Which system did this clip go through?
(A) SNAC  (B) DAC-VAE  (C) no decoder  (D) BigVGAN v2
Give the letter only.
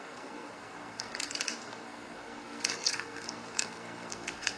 A